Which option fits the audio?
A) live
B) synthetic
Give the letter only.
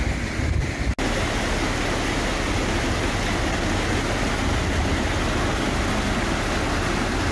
A